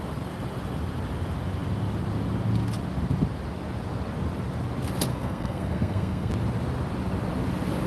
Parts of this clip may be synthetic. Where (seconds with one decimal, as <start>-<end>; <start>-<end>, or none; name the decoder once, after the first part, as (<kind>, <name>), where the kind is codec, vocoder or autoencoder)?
5.1-6.3 (codec, SNAC)